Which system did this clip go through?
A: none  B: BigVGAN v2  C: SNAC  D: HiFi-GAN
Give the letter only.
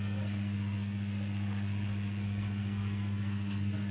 C